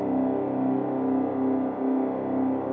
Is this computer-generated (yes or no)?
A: no